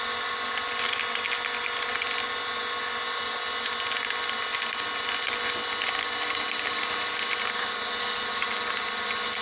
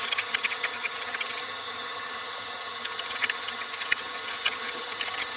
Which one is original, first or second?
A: first